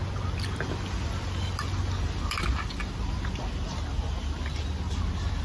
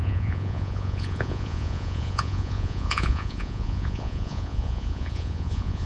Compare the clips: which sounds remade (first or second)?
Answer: second